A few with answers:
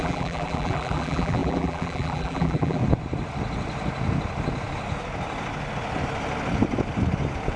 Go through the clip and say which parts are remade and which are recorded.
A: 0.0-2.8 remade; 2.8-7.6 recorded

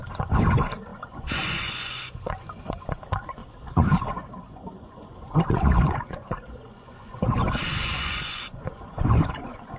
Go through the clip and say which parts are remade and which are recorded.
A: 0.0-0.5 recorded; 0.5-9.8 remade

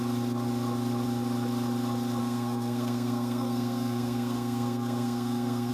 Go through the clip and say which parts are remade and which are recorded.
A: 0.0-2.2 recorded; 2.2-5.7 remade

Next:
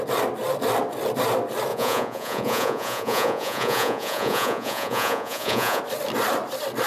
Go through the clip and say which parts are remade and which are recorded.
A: 0.0-1.7 recorded; 1.7-5.8 remade; 5.8-6.9 recorded

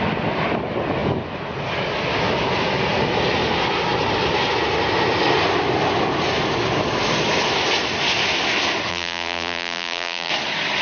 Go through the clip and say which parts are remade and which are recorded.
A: 0.0-8.9 recorded; 8.9-10.3 remade; 10.3-10.8 recorded

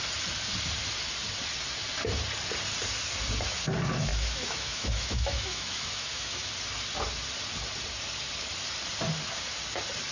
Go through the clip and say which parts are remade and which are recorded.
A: 0.0-4.1 recorded; 4.1-6.5 remade; 6.5-10.1 recorded

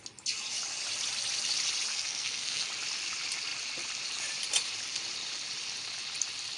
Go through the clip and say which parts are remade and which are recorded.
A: 0.0-1.9 recorded; 1.9-2.7 remade; 2.7-6.6 recorded